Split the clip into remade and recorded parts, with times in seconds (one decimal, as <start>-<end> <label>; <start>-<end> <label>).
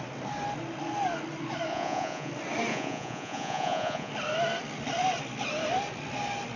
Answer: 0.0-1.7 recorded; 1.7-2.3 remade; 2.3-2.7 recorded; 2.7-4.1 remade; 4.1-6.6 recorded